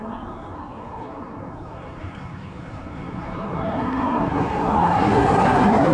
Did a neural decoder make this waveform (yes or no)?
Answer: yes